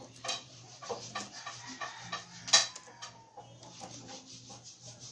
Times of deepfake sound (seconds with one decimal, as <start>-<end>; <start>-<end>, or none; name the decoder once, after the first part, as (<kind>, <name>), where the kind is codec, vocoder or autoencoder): none